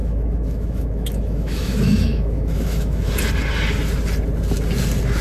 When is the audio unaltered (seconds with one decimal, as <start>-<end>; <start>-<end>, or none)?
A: 3.1-5.2